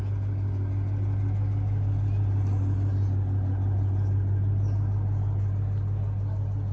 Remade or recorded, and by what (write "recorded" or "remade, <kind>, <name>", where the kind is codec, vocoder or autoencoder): recorded